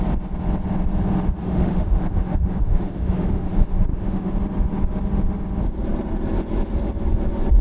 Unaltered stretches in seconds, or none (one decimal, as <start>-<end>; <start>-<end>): 0.0-1.4; 4.4-7.6